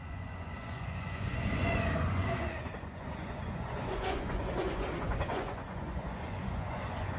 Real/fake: fake